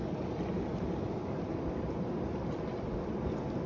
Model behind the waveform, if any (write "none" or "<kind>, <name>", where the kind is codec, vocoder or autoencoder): none